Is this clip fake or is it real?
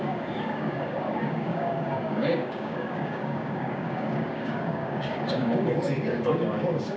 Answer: fake